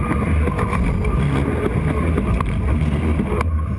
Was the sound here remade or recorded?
recorded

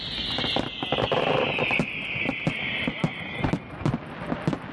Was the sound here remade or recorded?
recorded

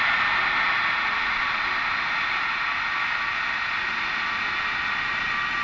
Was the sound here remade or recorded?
recorded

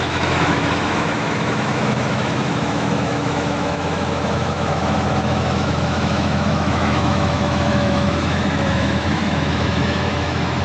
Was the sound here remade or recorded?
remade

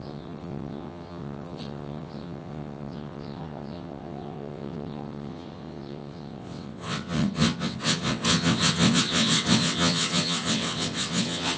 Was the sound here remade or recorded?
remade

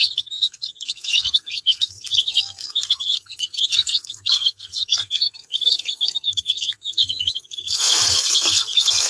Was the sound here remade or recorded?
remade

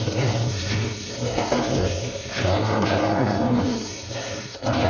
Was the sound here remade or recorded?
remade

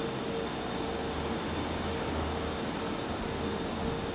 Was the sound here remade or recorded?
recorded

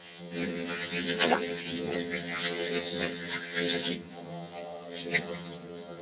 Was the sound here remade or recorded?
remade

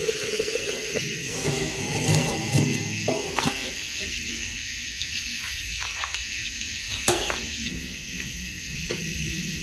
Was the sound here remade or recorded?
remade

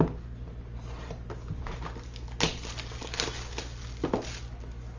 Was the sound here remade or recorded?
recorded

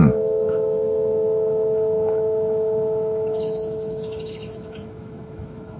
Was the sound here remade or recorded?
remade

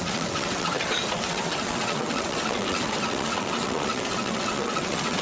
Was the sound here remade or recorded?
remade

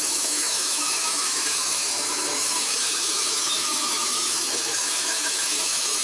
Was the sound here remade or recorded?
remade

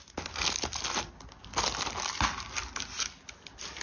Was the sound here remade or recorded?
recorded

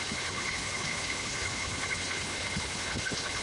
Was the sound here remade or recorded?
remade